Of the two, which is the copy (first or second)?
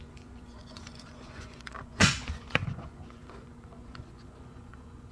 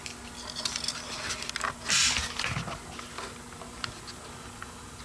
first